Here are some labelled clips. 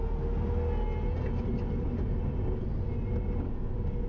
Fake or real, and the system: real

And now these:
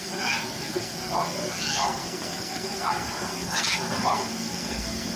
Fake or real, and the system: fake, codec, SNAC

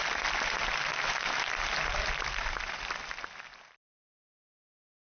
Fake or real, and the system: real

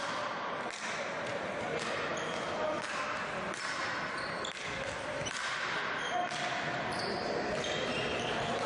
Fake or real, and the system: real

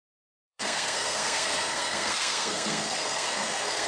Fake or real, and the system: fake, codec, SNAC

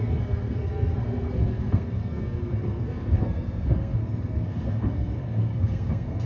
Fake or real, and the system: fake, codec, SNAC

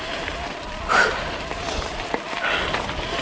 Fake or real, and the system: real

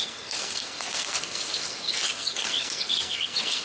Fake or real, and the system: fake, codec, SNAC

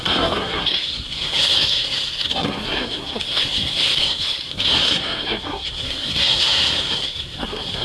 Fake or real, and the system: fake, codec, SNAC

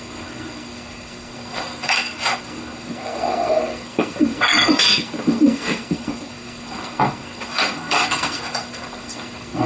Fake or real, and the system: fake, codec, SNAC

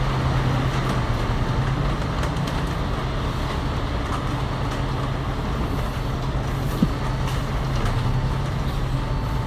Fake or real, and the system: real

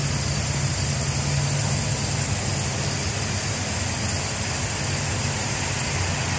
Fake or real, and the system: real